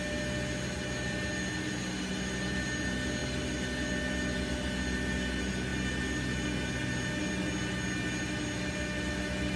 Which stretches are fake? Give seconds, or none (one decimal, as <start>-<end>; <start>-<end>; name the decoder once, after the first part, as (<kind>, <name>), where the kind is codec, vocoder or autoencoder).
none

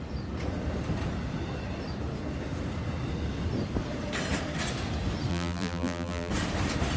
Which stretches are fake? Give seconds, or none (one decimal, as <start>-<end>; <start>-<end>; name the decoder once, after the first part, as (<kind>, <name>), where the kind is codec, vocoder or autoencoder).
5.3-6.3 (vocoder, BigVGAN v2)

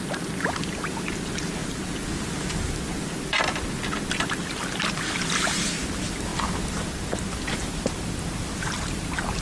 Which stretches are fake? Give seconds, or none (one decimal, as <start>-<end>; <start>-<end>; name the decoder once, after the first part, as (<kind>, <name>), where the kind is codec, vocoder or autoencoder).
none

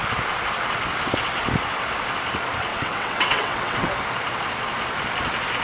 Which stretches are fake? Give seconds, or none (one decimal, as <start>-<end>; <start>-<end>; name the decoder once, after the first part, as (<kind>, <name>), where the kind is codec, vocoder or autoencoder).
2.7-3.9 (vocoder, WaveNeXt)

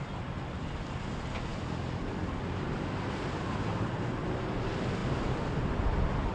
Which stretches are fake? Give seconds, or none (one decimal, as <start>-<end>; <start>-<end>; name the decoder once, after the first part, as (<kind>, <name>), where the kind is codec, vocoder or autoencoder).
none